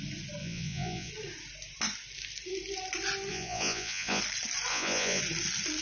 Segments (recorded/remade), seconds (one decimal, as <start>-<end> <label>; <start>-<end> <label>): 0.0-0.4 recorded; 0.4-1.1 remade; 1.1-3.3 recorded; 3.3-4.2 remade; 4.2-4.7 recorded; 4.7-5.2 remade; 5.2-5.8 recorded